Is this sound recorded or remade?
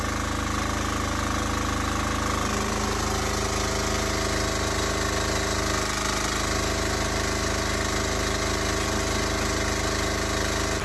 recorded